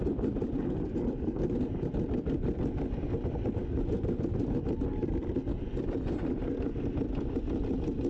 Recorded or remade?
recorded